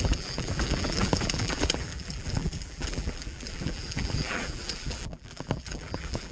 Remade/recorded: remade